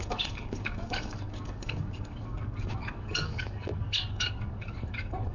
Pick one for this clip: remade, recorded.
remade